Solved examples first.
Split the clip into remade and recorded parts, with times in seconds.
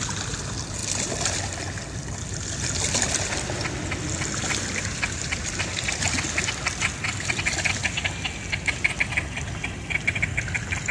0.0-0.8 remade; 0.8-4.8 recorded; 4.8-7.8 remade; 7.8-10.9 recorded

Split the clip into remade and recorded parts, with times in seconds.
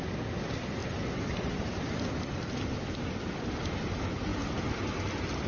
0.0-5.5 recorded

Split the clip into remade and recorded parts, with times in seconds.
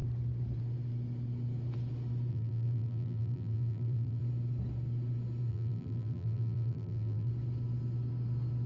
0.0-2.3 recorded; 2.3-4.2 remade; 4.2-5.5 recorded; 5.5-7.3 remade; 7.3-8.7 recorded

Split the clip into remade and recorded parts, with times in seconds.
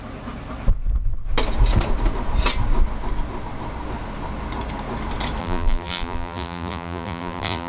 0.0-5.4 recorded; 5.4-7.7 remade